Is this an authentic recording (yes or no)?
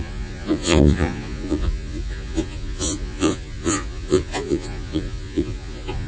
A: no